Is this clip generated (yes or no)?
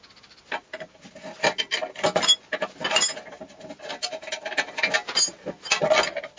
no